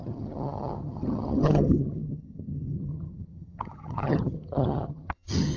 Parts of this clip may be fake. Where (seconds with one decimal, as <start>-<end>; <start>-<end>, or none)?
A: 0.0-5.6